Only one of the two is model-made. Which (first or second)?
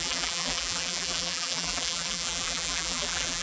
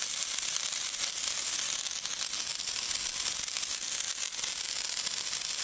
first